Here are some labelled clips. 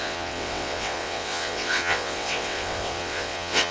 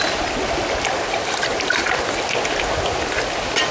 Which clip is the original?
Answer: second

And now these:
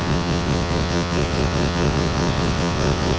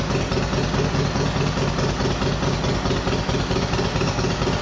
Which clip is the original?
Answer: second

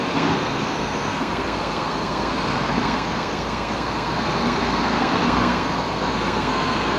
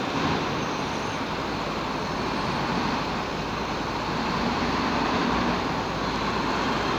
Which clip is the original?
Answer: second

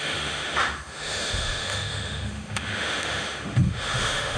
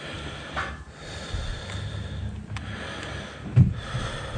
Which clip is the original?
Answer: second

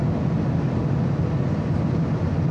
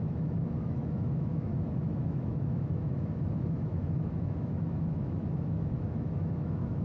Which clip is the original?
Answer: first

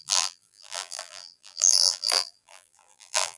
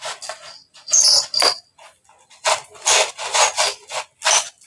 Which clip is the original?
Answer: second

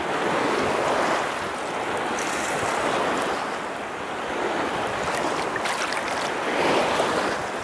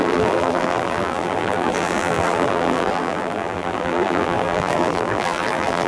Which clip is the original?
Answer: first